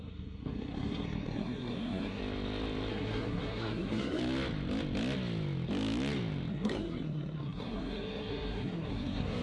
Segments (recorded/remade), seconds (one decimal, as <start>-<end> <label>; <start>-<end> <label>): 0.0-2.2 remade; 2.2-2.9 recorded; 2.9-4.2 remade; 4.2-6.5 recorded; 6.5-9.4 remade

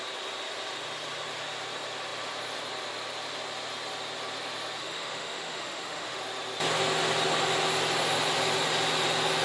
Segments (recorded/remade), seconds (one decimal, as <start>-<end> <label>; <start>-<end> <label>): 0.0-4.8 recorded; 4.8-6.2 remade; 6.2-9.4 recorded

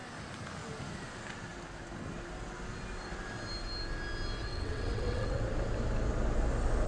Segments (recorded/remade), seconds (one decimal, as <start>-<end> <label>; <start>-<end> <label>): 0.0-4.5 recorded; 4.5-5.4 remade; 5.4-6.9 recorded

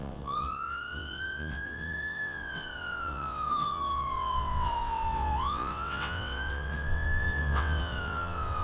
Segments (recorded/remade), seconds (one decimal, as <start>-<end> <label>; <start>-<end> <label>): 0.0-8.6 remade

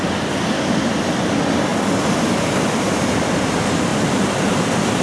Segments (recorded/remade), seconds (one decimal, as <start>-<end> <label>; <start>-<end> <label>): 0.0-5.0 recorded